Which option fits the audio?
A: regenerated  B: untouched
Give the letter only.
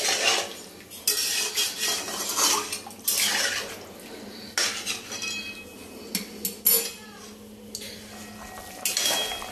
B